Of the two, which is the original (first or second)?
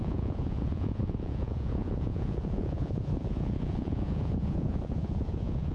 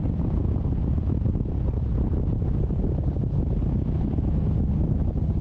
second